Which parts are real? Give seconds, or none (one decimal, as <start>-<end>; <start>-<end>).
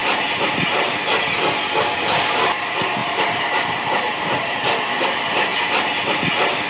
1.3-3.0; 4.9-6.7